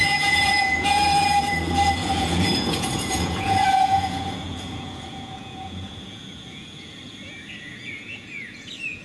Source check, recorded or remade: remade